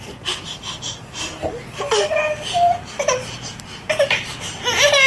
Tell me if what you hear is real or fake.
real